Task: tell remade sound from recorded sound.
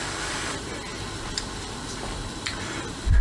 remade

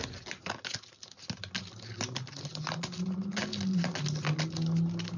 recorded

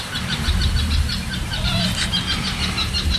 remade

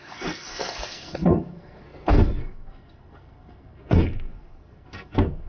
remade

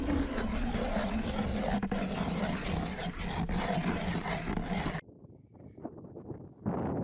recorded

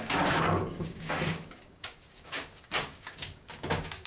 remade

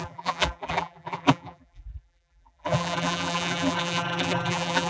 remade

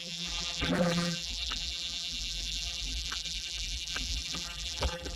remade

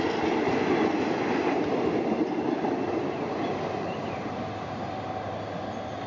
recorded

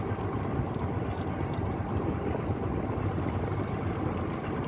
recorded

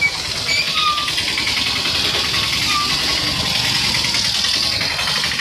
recorded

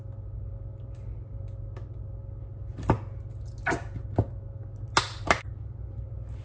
recorded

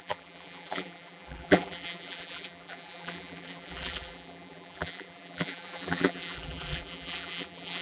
remade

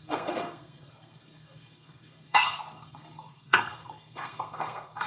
remade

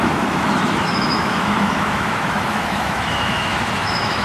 remade